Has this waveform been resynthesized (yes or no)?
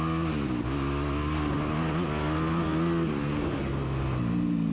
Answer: no